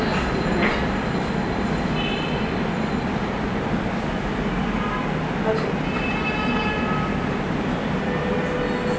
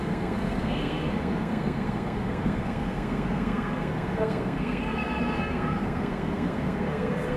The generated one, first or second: second